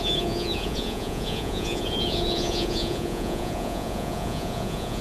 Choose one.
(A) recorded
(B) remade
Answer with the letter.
B